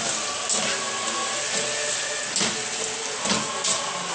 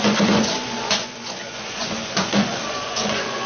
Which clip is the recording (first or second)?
first